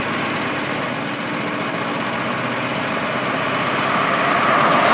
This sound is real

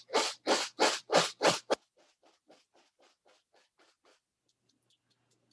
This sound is real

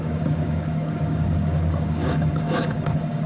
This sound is fake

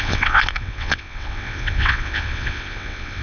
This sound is fake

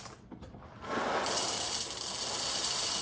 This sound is real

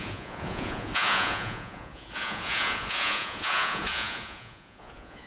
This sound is fake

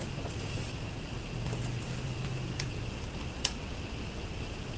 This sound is fake